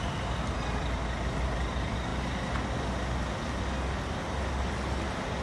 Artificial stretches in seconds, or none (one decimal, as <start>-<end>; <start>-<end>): none